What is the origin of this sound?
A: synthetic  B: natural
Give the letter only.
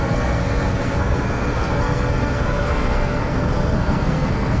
A